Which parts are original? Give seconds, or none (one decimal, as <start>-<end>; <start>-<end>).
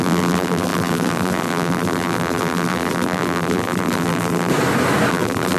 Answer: 4.5-5.1